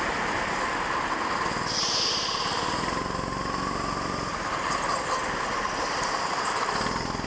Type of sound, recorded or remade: recorded